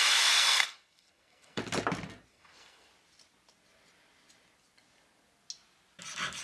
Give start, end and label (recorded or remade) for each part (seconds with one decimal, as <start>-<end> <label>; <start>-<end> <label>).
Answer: 0.0-1.6 remade; 1.6-2.3 recorded; 2.3-2.9 remade; 2.9-6.4 recorded